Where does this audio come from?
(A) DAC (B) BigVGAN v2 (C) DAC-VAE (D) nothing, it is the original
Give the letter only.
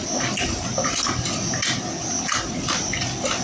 D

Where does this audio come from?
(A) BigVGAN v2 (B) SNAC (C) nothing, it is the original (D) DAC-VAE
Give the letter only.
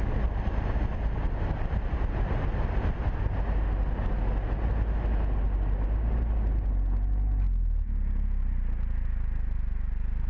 C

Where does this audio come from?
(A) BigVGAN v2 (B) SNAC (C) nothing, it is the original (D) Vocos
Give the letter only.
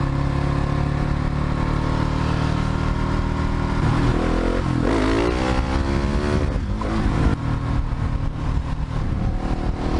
C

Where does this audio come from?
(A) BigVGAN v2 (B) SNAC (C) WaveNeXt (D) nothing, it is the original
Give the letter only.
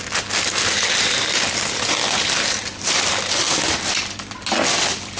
D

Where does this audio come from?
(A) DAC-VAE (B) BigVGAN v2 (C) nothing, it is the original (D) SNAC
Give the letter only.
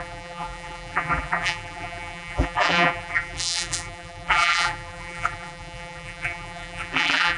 B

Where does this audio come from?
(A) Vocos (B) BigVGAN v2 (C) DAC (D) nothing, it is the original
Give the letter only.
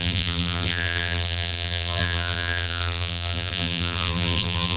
B